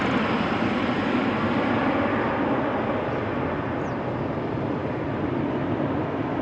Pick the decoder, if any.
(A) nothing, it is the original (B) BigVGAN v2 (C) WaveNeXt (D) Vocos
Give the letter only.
A